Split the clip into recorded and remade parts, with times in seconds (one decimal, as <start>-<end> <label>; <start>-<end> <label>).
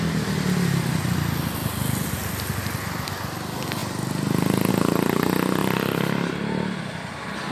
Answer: 0.0-1.6 recorded; 1.6-2.2 remade; 2.2-3.8 recorded; 3.8-4.7 remade; 4.7-7.5 recorded